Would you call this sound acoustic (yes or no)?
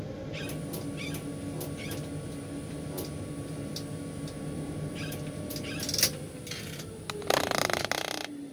yes